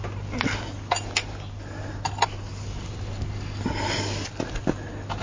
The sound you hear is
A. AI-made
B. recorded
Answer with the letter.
B